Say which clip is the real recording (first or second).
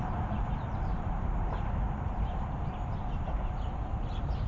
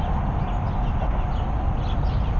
second